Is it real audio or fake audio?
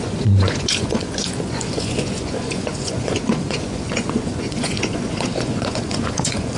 fake